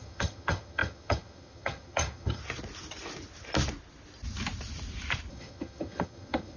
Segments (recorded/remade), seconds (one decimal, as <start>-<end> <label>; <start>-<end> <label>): 0.0-2.4 remade; 2.4-5.3 recorded; 5.3-6.6 remade